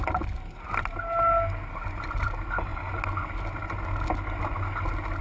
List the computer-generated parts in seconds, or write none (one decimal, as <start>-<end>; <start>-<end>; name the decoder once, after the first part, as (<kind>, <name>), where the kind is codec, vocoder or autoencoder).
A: none

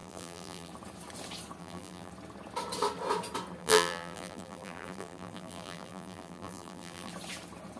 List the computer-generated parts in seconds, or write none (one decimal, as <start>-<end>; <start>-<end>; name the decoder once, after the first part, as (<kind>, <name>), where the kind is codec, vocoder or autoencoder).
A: 0.0-0.7 (vocoder, BigVGAN v2); 1.6-2.1; 3.6-7.1

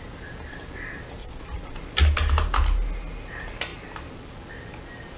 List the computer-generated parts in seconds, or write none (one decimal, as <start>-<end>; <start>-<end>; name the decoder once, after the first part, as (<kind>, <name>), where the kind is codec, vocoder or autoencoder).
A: 1.2-1.8 (vocoder, Vocos)